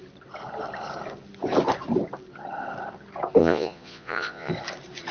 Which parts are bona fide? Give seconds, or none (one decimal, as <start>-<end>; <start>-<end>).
0.0-3.4; 4.5-5.1